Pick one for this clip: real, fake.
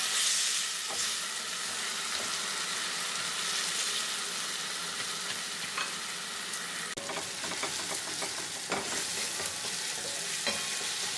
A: real